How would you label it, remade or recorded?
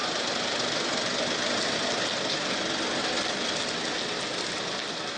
recorded